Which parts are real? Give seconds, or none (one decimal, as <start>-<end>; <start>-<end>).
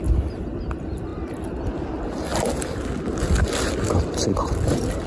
0.0-5.1